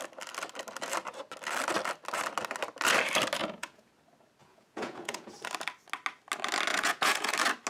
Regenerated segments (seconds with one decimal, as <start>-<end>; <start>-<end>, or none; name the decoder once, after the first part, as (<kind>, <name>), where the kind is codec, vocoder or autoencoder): 3.4-3.9 (vocoder, Vocos); 4.4-5.3; 6.7-7.3

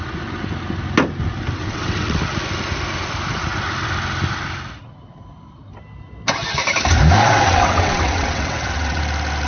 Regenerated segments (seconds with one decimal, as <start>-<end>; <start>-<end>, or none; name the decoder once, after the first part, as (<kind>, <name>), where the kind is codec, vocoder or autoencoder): 1.6-2.2 (vocoder, WaveNeXt); 7.2-9.0

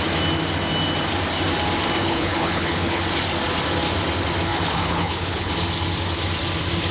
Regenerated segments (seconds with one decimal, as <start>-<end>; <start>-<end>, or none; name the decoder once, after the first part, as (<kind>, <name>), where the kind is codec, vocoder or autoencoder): 2.0-3.0 (codec, HILCodec); 4.5-5.5

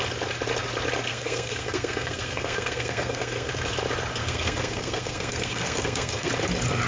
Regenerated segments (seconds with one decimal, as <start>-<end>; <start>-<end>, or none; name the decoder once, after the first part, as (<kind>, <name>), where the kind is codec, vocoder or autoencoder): 1.1-3.5 (codec, SNAC); 4.2-6.3

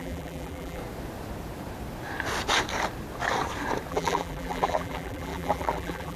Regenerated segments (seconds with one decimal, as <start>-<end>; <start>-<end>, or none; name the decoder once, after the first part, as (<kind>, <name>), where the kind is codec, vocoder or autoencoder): 0.0-0.8 (vocoder, BigVGAN v2); 3.9-6.2

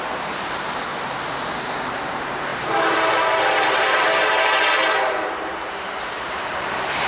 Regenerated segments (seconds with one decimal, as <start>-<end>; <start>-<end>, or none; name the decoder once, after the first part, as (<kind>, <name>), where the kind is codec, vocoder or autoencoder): 0.0-0.9 (vocoder, BigVGAN v2); 1.9-7.1

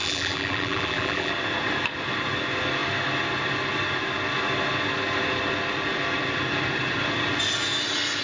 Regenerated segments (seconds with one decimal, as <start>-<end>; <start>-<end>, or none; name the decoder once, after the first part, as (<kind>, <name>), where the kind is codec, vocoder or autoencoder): 0.0-1.3 (vocoder, BigVGAN v2)